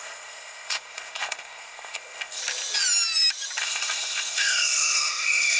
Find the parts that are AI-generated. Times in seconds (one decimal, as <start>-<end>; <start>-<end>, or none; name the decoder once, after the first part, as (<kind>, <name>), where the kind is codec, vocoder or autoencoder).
0.0-2.4 (codec, ZipCodec); 3.6-5.6